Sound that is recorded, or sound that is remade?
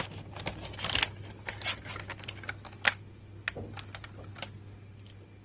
recorded